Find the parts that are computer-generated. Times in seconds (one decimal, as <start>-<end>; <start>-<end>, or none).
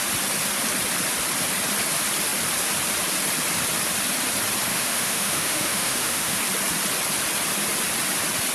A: 4.7-6.4